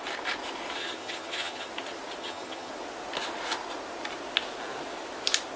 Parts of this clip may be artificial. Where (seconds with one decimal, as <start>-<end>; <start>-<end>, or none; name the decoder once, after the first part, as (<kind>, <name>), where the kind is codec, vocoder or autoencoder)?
0.8-1.7 (vocoder, HiFi-GAN); 2.2-2.7